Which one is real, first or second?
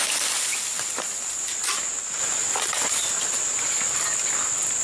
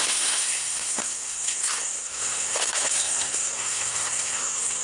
first